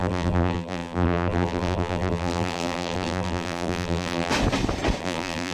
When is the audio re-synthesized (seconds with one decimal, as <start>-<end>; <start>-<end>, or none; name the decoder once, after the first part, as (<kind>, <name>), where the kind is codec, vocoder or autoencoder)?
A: 0.0-4.3 (vocoder, BigVGAN v2); 5.0-5.5

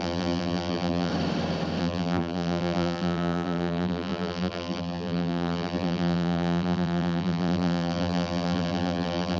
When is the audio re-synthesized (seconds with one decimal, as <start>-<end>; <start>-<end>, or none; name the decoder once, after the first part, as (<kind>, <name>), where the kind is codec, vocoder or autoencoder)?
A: 0.0-1.1 (vocoder, BigVGAN v2); 1.8-9.4

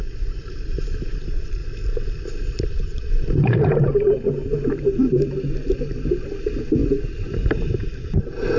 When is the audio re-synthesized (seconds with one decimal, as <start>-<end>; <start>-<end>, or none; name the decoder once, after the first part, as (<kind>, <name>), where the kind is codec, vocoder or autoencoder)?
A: 0.0-1.6 (vocoder, BigVGAN v2); 2.6-8.6

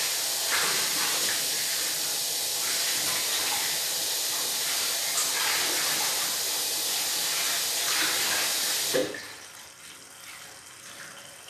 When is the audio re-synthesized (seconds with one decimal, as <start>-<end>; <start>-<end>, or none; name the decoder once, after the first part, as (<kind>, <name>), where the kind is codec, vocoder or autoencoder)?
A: none

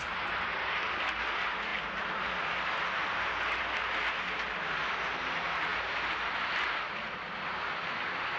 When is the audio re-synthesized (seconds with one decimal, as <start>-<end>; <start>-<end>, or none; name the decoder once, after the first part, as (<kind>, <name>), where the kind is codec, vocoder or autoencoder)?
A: none

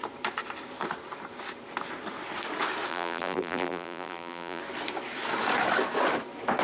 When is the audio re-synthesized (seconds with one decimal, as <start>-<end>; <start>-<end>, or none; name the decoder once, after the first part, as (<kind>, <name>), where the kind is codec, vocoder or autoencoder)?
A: 2.9-4.6 (vocoder, BigVGAN v2)

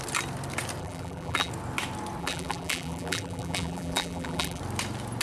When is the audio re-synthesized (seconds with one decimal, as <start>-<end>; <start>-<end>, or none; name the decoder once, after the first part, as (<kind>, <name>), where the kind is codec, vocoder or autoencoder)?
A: 0.8-1.5 (vocoder, BigVGAN v2); 2.2-4.6